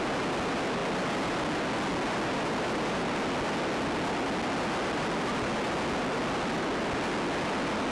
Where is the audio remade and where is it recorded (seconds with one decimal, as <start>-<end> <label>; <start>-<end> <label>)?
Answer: 0.0-7.9 recorded